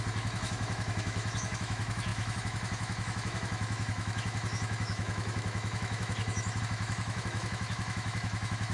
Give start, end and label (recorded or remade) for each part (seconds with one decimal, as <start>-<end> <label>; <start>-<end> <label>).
0.0-8.7 remade